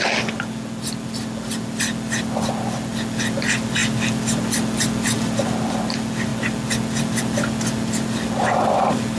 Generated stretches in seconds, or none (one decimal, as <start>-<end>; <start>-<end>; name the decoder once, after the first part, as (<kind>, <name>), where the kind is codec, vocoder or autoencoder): none